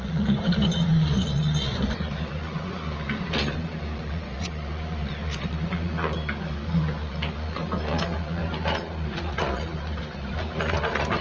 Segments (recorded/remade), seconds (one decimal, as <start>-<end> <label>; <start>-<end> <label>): 0.0-11.2 remade